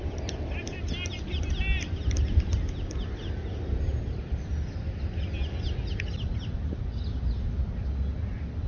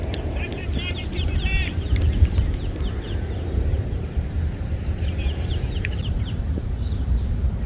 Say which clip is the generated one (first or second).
second